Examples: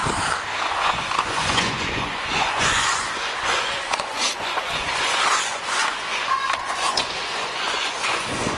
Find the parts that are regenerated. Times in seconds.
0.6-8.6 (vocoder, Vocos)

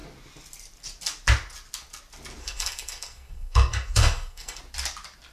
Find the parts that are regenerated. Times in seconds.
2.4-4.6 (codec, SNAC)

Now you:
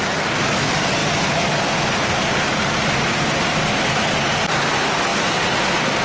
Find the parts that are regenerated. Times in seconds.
none

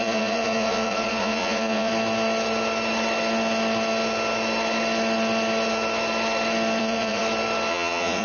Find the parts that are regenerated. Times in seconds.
0.0-1.9 (vocoder, Vocos); 6.8-7.2; 7.7-8.2